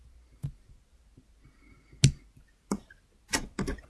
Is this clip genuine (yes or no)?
yes